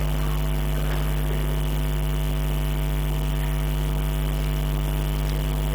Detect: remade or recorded recorded